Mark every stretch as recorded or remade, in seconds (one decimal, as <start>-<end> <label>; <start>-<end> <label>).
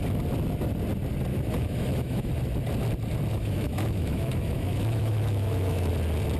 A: 0.0-1.3 recorded; 1.3-2.3 remade; 2.3-3.3 recorded; 3.3-5.9 remade; 5.9-6.4 recorded